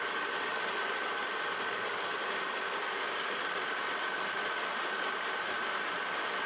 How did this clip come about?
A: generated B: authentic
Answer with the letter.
B